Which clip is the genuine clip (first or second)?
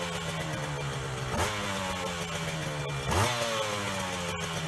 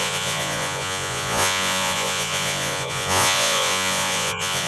first